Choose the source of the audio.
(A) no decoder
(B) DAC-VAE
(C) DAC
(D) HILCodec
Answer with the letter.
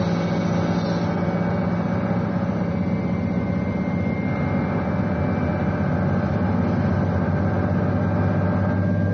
A